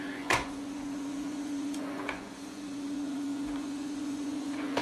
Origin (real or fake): fake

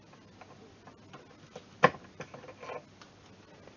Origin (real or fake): real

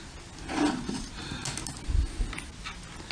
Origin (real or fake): real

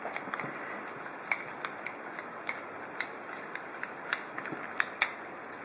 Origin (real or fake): real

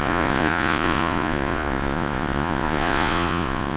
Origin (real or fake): fake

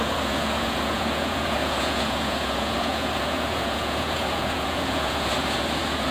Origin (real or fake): fake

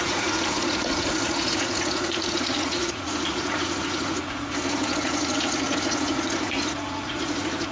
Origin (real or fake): fake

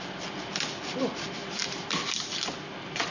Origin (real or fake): real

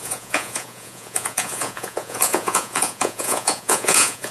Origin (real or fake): fake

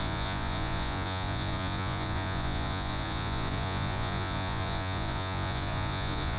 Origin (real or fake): fake